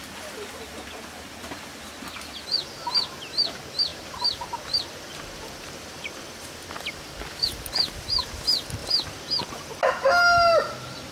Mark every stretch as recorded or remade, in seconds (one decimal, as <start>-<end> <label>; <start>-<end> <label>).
0.0-3.9 recorded; 3.9-6.0 remade; 6.0-8.8 recorded; 8.8-9.4 remade; 9.4-11.1 recorded